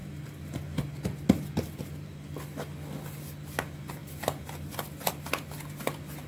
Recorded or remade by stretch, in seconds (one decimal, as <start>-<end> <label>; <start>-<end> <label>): 0.0-6.3 recorded